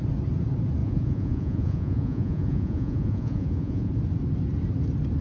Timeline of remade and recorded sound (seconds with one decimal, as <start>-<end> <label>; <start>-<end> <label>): 0.0-0.8 recorded; 0.8-3.9 remade; 3.9-5.2 recorded